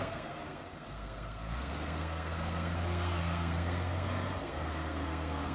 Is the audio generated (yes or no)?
yes